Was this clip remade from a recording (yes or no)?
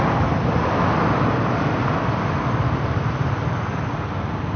no